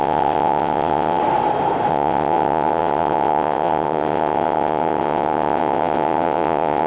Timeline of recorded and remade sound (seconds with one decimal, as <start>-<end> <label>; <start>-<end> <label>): 0.0-1.2 remade; 1.2-1.9 recorded; 1.9-6.9 remade

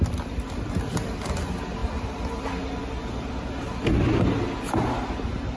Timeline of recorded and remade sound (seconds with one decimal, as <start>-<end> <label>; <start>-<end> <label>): 0.0-5.6 recorded

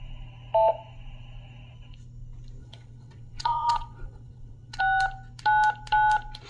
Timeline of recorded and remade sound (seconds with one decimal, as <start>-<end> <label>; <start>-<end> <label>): 0.0-2.6 recorded; 2.6-4.8 remade; 4.8-6.5 recorded

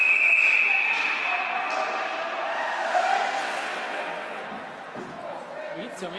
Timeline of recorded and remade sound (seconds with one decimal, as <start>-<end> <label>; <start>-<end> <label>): 0.0-3.4 recorded; 3.4-4.4 remade; 4.4-6.2 recorded

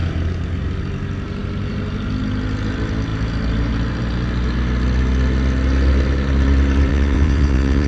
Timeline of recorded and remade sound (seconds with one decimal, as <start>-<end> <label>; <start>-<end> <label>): 0.0-6.9 recorded; 6.9-7.9 remade

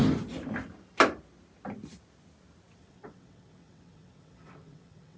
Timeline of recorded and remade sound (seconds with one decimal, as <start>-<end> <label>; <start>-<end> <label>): 0.0-2.8 recorded; 2.8-5.2 remade

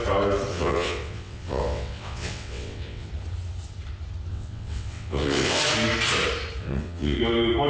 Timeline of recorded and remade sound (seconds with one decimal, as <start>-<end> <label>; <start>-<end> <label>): 0.0-0.5 recorded; 0.5-3.1 remade; 3.1-4.3 recorded; 4.3-5.6 remade; 5.6-6.6 recorded; 6.6-7.2 remade; 7.2-7.7 recorded

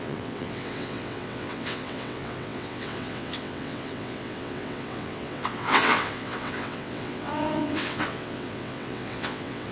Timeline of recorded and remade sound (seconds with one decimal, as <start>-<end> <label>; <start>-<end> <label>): 0.0-9.7 remade